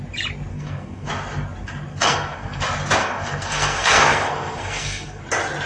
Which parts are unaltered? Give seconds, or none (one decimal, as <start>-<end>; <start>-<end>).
0.0-0.5; 1.1-1.9; 2.6-3.0; 5.2-5.7